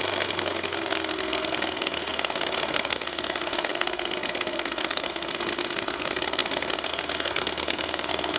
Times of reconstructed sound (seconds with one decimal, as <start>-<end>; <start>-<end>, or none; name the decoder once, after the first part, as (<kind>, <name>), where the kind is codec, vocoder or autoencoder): 0.0-8.4 (codec, SNAC)